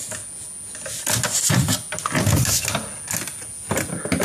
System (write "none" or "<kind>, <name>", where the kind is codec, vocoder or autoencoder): none